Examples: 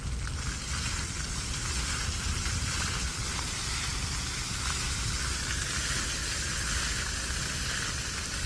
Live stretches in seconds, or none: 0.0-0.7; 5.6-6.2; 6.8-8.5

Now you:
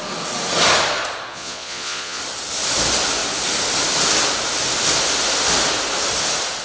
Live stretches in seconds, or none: 0.0-1.3; 2.2-6.6